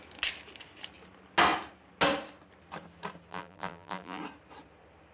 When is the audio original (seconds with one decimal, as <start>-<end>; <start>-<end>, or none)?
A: 0.0-3.3; 4.2-5.1